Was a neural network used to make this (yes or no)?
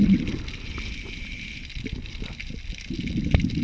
no